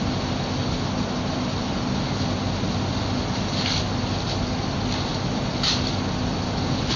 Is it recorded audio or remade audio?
recorded